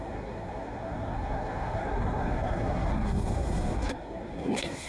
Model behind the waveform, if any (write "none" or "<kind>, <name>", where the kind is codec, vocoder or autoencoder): codec, SNAC